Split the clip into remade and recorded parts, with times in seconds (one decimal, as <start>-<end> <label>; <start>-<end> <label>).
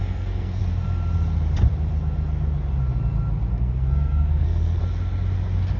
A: 0.0-0.6 remade; 0.6-3.5 recorded; 3.5-4.8 remade; 4.8-5.8 recorded